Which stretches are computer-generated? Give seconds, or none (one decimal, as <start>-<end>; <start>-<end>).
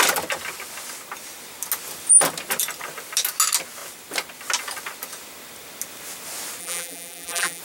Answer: 6.6-7.6